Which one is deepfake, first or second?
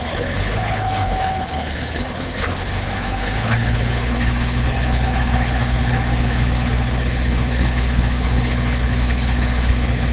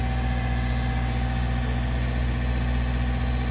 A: first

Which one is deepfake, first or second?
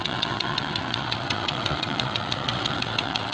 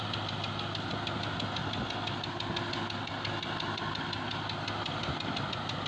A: first